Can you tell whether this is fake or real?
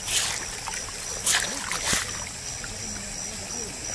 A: real